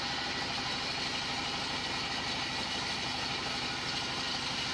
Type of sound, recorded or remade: recorded